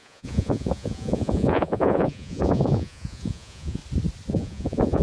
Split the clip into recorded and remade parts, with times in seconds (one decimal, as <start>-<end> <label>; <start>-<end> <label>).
0.0-3.8 remade; 3.8-4.3 recorded; 4.3-5.0 remade